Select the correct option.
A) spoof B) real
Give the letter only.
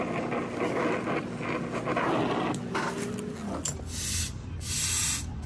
B